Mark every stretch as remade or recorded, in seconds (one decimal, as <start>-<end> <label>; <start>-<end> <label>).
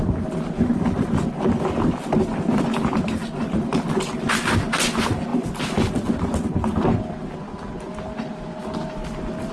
0.0-9.5 recorded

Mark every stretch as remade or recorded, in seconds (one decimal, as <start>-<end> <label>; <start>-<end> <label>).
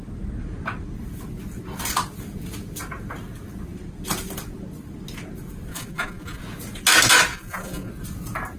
0.0-5.7 recorded; 5.7-6.4 remade; 6.4-7.3 recorded; 7.3-7.9 remade; 7.9-8.6 recorded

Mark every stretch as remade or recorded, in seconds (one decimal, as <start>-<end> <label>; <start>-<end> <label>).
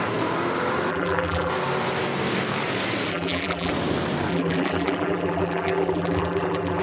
0.0-0.9 recorded; 0.9-1.5 remade; 1.5-3.1 recorded; 3.1-3.7 remade; 3.7-4.3 recorded; 4.3-6.8 remade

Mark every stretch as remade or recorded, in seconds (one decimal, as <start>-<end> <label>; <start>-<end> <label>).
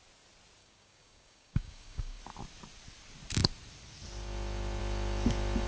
0.0-0.6 recorded; 0.6-2.2 remade; 2.2-5.7 recorded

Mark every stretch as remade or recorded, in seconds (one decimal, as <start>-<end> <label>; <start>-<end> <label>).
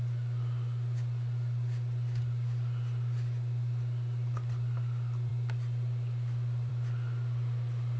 0.0-8.0 recorded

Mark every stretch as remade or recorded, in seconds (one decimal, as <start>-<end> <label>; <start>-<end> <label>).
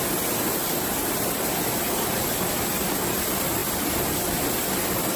0.0-5.2 recorded